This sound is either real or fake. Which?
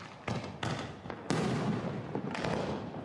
real